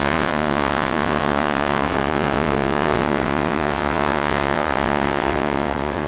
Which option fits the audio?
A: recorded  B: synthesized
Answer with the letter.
B